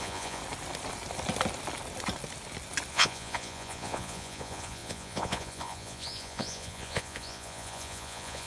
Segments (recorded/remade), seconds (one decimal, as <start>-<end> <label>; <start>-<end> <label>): 0.0-0.4 remade; 0.4-2.9 recorded; 2.9-8.5 remade